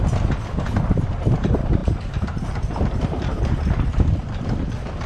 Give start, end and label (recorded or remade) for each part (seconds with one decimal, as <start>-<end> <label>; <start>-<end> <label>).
0.0-1.8 recorded; 1.8-3.4 remade; 3.4-5.1 recorded